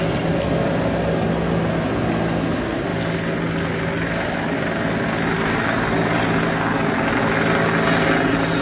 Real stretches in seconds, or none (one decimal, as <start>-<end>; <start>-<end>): 0.0-8.6